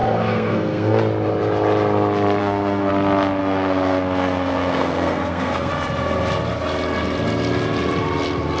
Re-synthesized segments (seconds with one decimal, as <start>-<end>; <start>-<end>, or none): 0.0-1.0; 2.4-2.9; 3.4-5.7

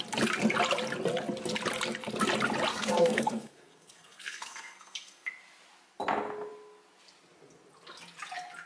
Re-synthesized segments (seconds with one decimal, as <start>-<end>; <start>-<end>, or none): 2.7-5.3

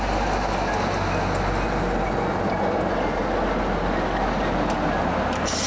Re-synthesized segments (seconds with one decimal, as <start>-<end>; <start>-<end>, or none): none

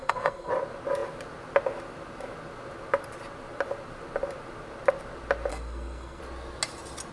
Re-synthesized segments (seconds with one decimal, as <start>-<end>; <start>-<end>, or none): 0.0-0.5; 5.5-6.2

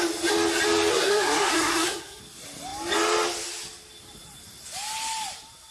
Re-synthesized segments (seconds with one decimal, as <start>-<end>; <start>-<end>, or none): 0.9-2.2

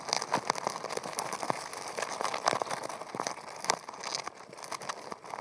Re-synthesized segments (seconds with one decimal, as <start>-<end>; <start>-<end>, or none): none